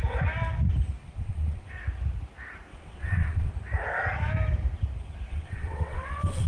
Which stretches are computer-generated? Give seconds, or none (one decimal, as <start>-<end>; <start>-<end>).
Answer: 1.0-1.7; 2.7-3.5; 5.3-6.5